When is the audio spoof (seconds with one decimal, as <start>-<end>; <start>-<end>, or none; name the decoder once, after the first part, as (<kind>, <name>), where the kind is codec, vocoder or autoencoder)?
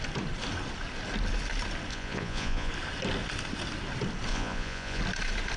1.9-2.7 (vocoder, Vocos); 4.3-5.0